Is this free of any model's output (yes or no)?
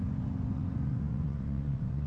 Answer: no